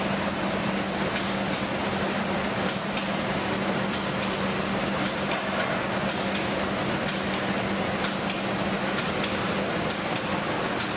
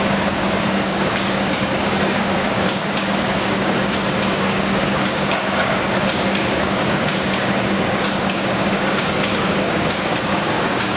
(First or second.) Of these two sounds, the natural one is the first